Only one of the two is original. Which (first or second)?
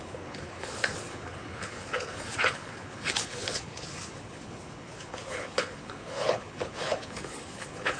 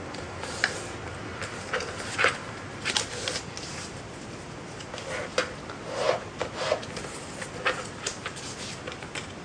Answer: second